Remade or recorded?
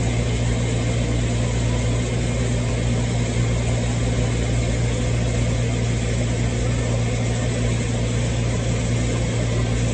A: recorded